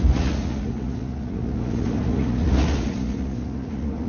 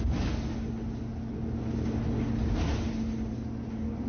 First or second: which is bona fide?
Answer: second